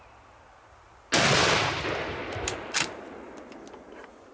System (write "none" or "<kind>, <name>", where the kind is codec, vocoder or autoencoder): none